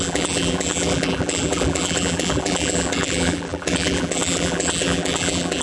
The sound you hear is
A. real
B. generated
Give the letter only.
B